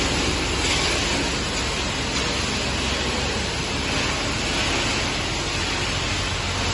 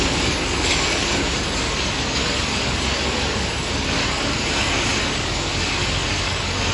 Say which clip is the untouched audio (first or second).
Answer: first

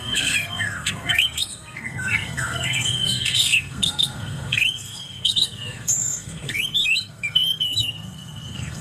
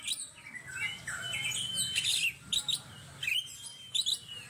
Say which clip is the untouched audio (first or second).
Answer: second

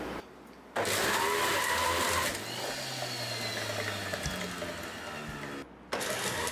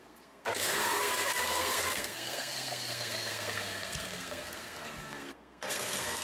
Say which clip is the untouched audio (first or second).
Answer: first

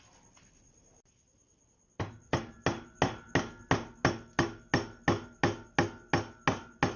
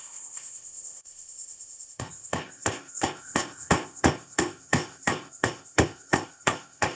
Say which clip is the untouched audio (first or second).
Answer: first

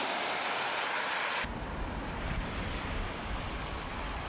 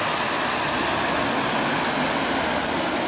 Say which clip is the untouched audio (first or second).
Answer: second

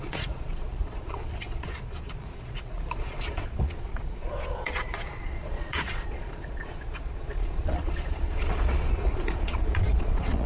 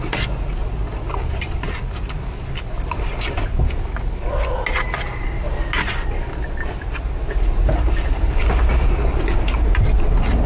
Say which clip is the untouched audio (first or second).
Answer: second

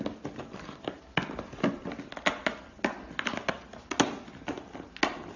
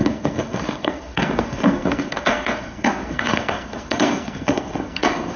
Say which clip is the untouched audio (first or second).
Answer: first